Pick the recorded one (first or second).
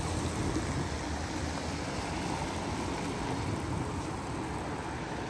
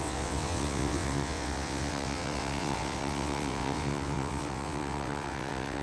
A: first